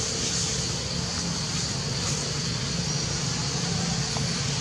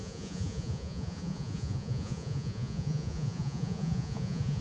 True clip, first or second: first